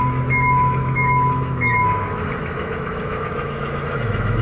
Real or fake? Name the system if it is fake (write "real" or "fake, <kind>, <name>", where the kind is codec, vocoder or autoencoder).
fake, autoencoder, DAC-VAE